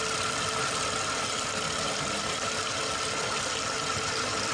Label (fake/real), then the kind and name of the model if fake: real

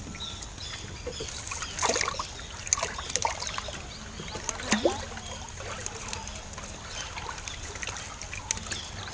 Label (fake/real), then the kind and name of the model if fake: real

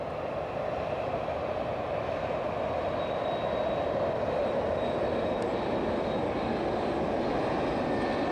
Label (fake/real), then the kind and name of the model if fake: real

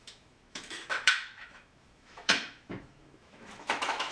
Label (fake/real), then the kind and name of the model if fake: fake, autoencoder, DAC-VAE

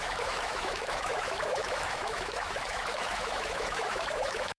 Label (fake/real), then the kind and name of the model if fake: fake, autoencoder, DAC-VAE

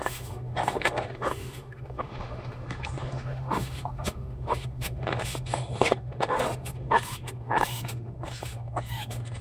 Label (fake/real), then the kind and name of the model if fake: fake, autoencoder, DAC-VAE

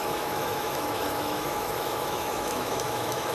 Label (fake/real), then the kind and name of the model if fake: fake, autoencoder, DAC-VAE